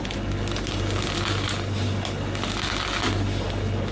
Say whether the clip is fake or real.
real